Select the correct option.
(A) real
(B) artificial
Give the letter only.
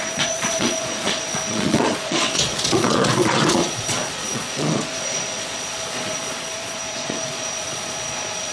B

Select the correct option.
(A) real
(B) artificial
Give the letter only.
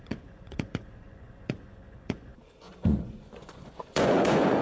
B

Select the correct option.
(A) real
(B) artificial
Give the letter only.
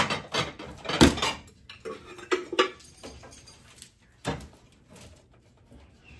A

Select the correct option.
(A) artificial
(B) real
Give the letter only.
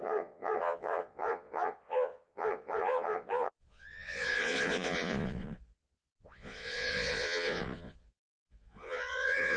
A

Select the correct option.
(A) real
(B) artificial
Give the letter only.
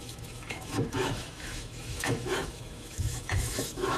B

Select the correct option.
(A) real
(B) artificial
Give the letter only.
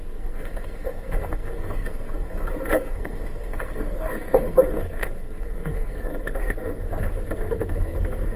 B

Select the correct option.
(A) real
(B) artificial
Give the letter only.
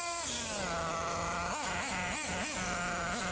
A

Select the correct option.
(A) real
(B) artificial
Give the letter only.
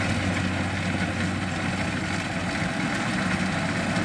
A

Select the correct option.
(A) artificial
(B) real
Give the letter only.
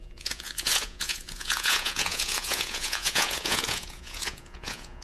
A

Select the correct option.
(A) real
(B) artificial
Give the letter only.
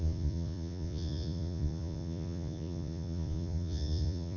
B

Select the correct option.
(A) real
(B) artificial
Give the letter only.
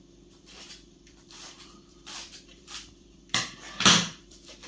B